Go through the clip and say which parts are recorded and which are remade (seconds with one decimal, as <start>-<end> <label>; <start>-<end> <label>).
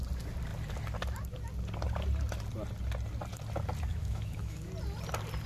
0.0-3.9 recorded; 3.9-4.7 remade; 4.7-5.5 recorded